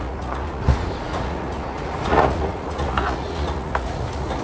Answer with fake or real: fake